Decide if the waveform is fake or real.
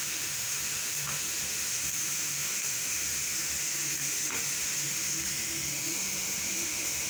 fake